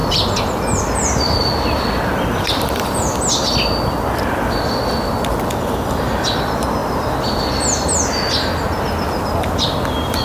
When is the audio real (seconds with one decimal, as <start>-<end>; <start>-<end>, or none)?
0.0-10.2